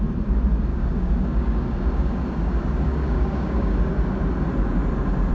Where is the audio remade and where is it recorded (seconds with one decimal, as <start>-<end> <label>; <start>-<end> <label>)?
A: 0.0-0.7 recorded; 0.7-3.9 remade; 3.9-5.3 recorded